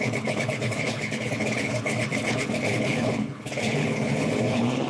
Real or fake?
fake